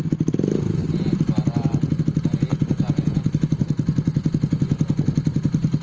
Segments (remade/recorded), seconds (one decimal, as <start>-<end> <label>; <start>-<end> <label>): 0.0-2.5 recorded; 2.5-3.3 remade; 3.3-5.8 recorded